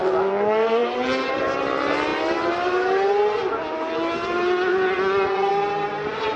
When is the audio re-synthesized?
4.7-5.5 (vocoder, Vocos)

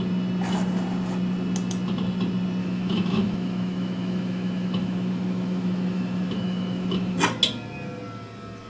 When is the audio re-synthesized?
2.6-7.2 (autoencoder, DAC-VAE)

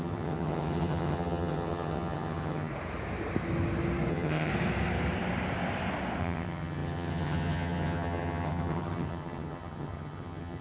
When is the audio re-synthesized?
0.0-2.7 (vocoder, HiFi-GAN); 4.1-4.5; 6.2-10.6

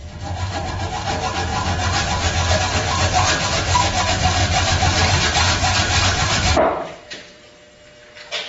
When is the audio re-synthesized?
4.4-7.4 (vocoder, BigVGAN v2)

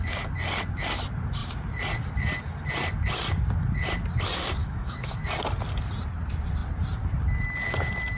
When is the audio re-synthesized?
4.6-5.2 (autoencoder, DAC-VAE)